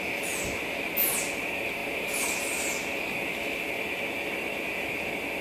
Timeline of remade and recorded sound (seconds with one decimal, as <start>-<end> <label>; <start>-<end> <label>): 0.0-5.4 recorded